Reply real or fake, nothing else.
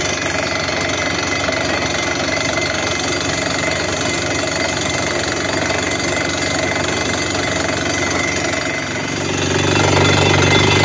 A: real